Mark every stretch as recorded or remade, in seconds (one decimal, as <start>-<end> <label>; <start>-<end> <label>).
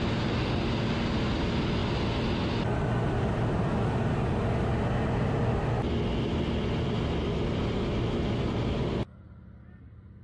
0.0-10.2 recorded